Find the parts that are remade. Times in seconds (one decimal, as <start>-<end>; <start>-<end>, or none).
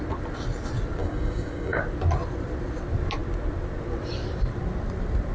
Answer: 1.0-1.8